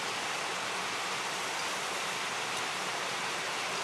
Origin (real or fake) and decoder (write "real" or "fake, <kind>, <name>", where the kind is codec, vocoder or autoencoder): real